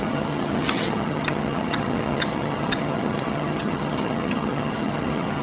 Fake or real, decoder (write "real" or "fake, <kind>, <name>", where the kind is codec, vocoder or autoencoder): fake, vocoder, HiFi-GAN